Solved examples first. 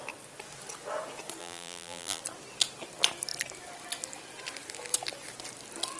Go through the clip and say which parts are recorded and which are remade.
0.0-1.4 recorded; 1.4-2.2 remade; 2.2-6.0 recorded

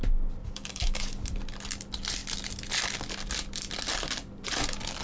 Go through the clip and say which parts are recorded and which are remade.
0.0-0.4 recorded; 0.4-1.0 remade; 1.0-5.0 recorded

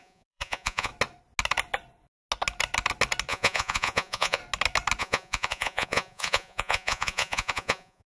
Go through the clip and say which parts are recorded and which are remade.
0.0-0.9 remade; 0.9-3.3 recorded; 3.3-4.4 remade; 4.4-5.0 recorded; 5.0-8.1 remade

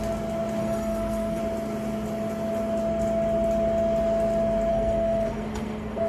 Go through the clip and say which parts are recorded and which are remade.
0.0-0.6 recorded; 0.6-1.4 remade; 1.4-4.7 recorded; 4.7-6.1 remade

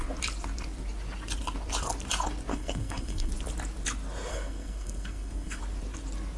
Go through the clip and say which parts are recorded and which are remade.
0.0-2.5 recorded; 2.5-3.3 remade; 3.3-4.3 recorded; 4.3-5.6 remade; 5.6-6.4 recorded

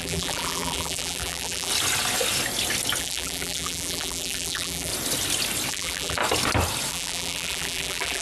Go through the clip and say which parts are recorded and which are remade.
0.0-1.7 remade; 1.7-3.0 recorded; 3.0-4.9 remade; 4.9-5.7 recorded; 5.7-6.2 remade; 6.2-6.9 recorded; 6.9-8.2 remade